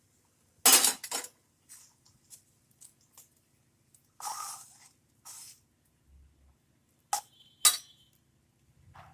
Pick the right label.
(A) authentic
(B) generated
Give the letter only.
A